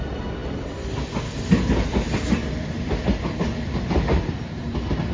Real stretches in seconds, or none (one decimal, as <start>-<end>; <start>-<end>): 0.0-5.1